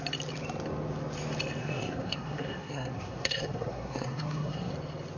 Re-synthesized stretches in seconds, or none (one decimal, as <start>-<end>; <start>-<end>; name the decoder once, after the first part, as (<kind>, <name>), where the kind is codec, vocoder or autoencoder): 1.6-4.7 (codec, SNAC)